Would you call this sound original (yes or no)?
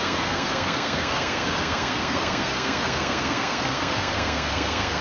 no